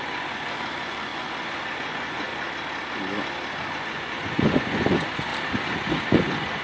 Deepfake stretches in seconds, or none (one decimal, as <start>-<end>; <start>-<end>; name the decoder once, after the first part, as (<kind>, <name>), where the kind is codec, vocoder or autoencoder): 0.0-2.3 (vocoder, Vocos); 3.7-5.3; 5.9-6.6